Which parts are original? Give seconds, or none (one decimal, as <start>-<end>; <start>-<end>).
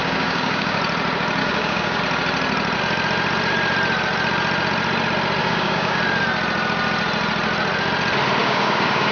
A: 0.8-1.4; 2.0-5.4; 6.0-8.4